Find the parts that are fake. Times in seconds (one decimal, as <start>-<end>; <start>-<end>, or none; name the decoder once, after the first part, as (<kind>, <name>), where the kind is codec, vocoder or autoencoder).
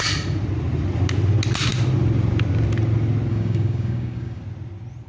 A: 3.3-4.4 (codec, DAC)